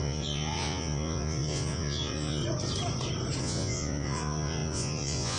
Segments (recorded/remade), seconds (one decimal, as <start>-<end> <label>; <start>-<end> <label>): 0.0-2.4 remade; 2.4-3.4 recorded; 3.4-5.4 remade